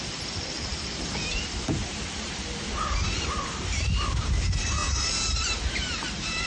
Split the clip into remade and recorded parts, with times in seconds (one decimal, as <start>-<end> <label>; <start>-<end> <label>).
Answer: 0.0-6.5 remade